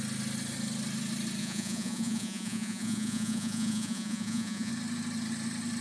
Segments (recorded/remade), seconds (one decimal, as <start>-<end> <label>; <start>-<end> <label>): 0.0-1.4 recorded; 1.4-4.7 remade; 4.7-5.8 recorded